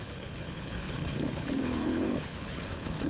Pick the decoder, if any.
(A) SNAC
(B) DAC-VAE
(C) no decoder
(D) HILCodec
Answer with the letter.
D